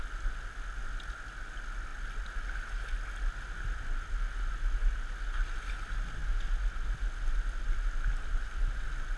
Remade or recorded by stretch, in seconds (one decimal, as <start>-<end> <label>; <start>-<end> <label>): 0.0-9.2 recorded